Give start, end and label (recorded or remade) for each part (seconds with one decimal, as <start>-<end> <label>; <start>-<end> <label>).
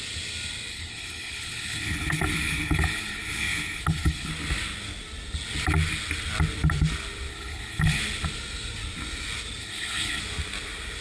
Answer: 0.0-0.7 recorded; 0.7-4.3 remade; 4.3-7.3 recorded; 7.3-8.0 remade; 8.0-9.6 recorded; 9.6-10.2 remade; 10.2-11.0 recorded